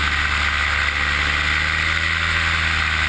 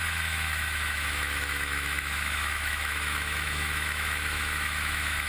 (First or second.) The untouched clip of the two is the first